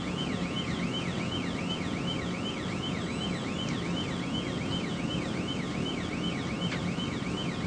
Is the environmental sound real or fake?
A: real